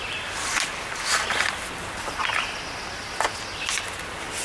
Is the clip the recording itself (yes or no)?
yes